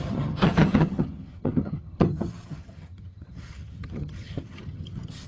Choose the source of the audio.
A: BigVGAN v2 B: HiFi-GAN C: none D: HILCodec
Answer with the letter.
B